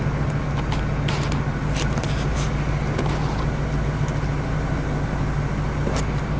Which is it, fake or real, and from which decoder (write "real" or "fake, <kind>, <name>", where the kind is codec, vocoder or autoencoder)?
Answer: real